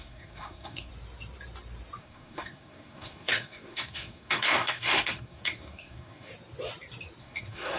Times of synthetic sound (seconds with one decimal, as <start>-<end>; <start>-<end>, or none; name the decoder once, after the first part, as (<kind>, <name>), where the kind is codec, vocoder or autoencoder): 0.0-0.9 (codec, SNAC); 2.0-6.3; 7.2-7.8